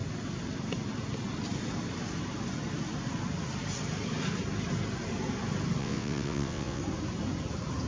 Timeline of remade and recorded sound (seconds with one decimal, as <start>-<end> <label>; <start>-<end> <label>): 0.0-5.8 recorded; 5.8-6.8 remade; 6.8-7.9 recorded